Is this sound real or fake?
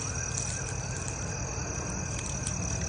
real